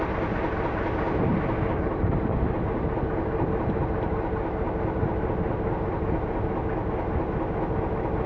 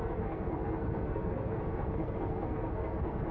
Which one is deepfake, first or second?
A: second